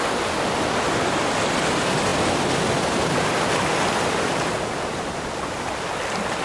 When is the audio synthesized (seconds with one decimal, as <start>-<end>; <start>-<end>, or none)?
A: none

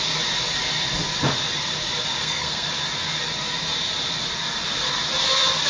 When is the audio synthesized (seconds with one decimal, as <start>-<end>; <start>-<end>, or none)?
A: 2.2-2.7

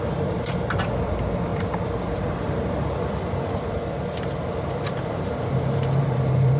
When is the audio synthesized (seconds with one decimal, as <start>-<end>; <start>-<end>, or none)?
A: 0.0-6.6

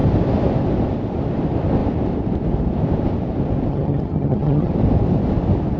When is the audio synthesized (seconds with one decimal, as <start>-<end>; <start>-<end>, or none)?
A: 3.7-4.7

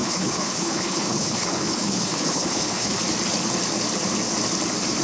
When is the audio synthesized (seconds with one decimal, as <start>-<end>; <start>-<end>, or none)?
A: 0.0-3.0

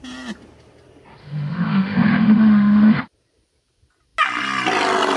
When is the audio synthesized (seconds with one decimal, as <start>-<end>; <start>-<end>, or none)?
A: 1.2-3.0

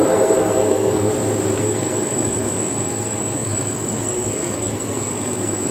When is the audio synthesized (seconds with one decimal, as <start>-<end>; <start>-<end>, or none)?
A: 0.0-1.1; 1.6-5.7

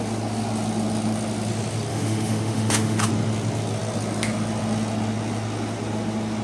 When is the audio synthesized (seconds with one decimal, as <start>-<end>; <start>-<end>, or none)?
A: 1.9-3.1